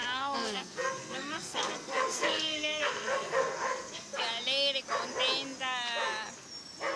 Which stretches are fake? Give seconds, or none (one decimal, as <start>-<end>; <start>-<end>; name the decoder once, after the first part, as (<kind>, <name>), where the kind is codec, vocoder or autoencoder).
0.0-4.2 (codec, SNAC)

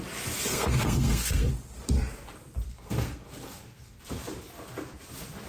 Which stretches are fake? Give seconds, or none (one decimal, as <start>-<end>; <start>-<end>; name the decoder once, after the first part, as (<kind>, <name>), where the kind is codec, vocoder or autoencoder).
0.5-1.5 (codec, SNAC); 2.7-4.0

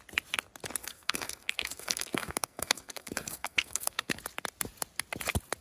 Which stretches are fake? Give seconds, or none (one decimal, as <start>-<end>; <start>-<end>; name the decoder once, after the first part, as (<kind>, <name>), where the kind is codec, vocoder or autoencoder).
0.8-4.2 (codec, SNAC)

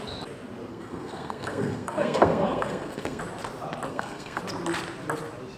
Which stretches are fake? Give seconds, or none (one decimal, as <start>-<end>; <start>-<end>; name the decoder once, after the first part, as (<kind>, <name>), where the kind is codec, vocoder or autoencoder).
0.7-3.2 (codec, SNAC); 3.9-4.4

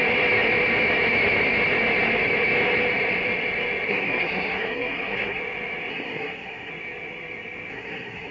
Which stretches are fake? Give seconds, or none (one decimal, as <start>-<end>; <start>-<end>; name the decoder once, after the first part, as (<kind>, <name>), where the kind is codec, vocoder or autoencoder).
3.9-5.4 (codec, SNAC); 5.9-6.7; 7.7-8.3

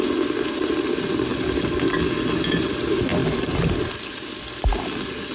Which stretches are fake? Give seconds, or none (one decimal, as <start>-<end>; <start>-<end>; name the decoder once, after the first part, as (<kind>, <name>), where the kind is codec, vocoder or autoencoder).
none